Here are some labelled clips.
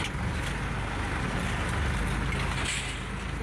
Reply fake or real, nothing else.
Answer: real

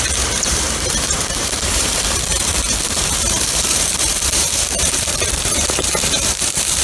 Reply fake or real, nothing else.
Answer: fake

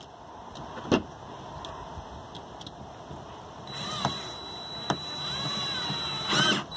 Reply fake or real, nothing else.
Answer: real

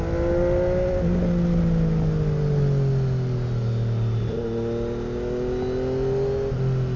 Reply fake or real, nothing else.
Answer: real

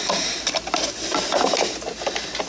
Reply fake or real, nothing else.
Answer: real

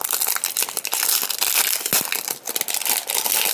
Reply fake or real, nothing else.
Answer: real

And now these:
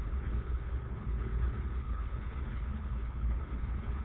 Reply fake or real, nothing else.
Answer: fake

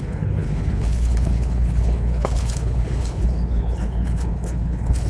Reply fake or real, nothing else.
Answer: fake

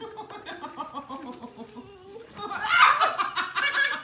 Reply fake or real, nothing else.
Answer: real